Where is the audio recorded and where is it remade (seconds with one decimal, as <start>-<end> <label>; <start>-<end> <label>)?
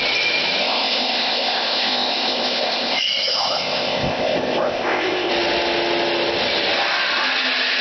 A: 0.0-0.6 recorded; 0.6-5.3 remade; 5.3-7.8 recorded